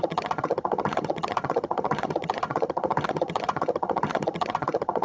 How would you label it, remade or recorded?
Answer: remade